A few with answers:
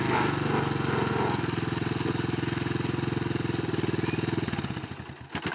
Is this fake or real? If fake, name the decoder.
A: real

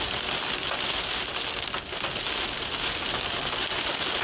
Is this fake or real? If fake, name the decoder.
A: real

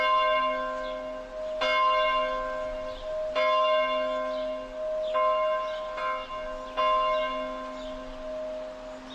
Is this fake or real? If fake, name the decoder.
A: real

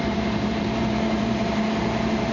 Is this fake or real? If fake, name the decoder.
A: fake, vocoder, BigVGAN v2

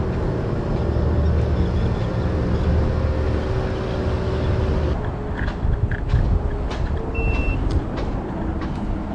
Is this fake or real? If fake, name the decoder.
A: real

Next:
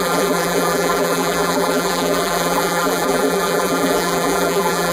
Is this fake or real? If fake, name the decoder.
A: fake, vocoder, BigVGAN v2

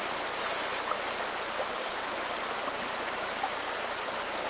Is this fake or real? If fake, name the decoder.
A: real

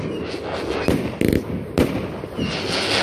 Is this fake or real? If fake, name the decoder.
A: real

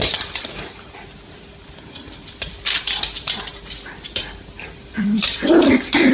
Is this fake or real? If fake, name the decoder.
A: fake, vocoder, BigVGAN v2